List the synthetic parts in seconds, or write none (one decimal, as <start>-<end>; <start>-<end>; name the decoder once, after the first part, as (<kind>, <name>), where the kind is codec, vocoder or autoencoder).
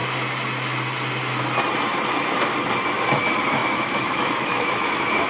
3.2-5.3 (autoencoder, DAC-VAE)